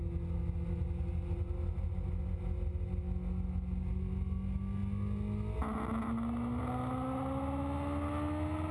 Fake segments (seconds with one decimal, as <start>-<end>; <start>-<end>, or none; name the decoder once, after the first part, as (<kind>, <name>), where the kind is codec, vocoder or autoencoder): none